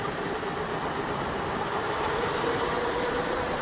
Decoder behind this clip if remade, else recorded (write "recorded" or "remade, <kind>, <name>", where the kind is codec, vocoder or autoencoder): remade, vocoder, BigVGAN v2